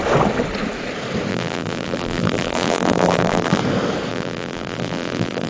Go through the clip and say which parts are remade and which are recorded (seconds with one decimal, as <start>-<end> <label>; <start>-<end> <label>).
0.0-1.3 recorded; 1.3-3.6 remade; 3.6-4.1 recorded; 4.1-5.5 remade